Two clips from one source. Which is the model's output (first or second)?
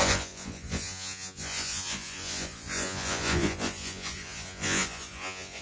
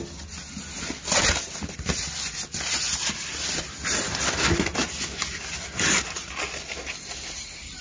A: first